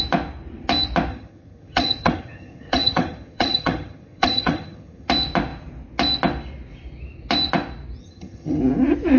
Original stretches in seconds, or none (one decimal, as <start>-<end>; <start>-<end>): 0.0-1.1; 5.1-8.0; 8.6-9.2